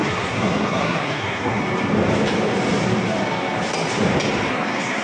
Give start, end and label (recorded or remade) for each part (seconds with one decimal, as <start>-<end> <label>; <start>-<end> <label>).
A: 0.0-1.6 remade; 1.6-4.5 recorded; 4.5-5.0 remade